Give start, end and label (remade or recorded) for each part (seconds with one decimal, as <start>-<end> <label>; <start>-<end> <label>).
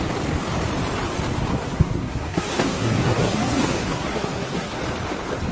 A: 0.0-1.5 recorded; 1.5-4.8 remade; 4.8-5.5 recorded